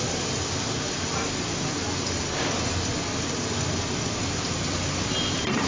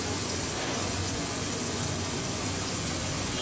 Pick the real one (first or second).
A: first